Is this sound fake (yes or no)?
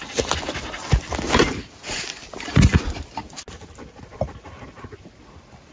no